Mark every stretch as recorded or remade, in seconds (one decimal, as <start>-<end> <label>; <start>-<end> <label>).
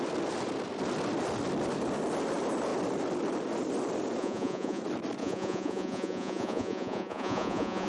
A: 0.0-4.2 recorded; 4.2-4.8 remade; 4.8-5.2 recorded; 5.2-7.9 remade